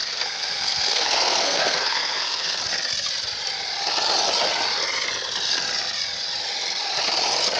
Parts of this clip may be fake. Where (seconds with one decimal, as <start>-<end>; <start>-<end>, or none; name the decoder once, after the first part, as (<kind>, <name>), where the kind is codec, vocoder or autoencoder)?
0.0-2.6 (codec, SNAC)